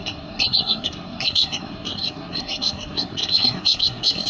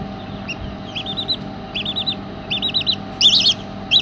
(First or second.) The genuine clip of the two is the second